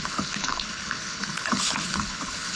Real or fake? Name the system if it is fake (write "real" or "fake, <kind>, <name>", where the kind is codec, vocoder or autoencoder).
fake, codec, HILCodec